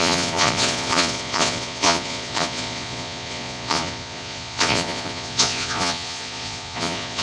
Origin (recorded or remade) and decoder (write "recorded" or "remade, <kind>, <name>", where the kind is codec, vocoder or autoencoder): remade, vocoder, Vocos